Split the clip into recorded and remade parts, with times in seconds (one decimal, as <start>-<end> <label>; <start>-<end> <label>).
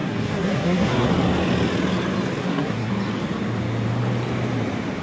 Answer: 0.0-1.1 remade; 1.1-2.4 recorded; 2.4-2.9 remade; 2.9-5.0 recorded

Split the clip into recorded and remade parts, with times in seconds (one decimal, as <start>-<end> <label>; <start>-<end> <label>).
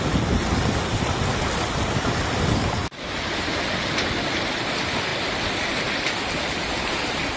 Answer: 0.0-7.4 recorded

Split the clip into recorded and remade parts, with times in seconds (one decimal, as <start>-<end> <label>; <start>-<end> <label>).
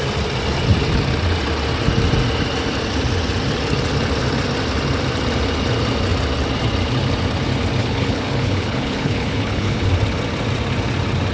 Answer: 0.0-7.8 recorded; 7.8-9.9 remade; 9.9-11.3 recorded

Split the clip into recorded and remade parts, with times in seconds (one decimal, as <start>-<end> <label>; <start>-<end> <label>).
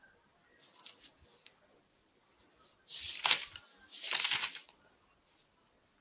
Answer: 0.0-6.0 recorded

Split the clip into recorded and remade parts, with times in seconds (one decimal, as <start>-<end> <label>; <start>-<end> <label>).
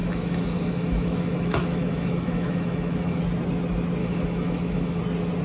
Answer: 0.0-3.2 remade; 3.2-4.0 recorded; 4.0-5.0 remade; 5.0-5.4 recorded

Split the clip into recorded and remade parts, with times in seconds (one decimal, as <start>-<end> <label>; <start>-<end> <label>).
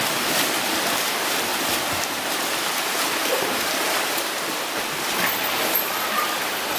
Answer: 0.0-6.8 recorded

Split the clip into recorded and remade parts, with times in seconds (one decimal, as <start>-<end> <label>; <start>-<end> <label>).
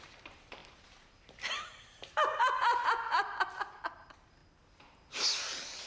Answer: 0.0-4.4 remade; 4.4-5.9 recorded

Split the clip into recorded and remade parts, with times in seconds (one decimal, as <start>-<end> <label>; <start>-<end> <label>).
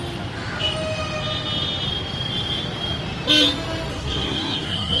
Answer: 0.0-3.9 recorded; 3.9-5.0 remade